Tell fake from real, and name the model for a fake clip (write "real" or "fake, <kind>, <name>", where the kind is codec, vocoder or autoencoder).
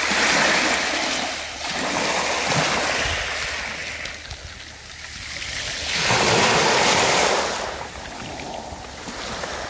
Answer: real